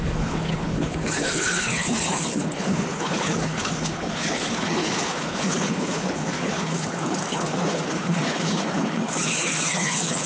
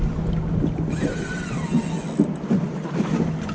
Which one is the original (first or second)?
second